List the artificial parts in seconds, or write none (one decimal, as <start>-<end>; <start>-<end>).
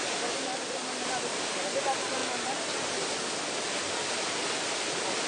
none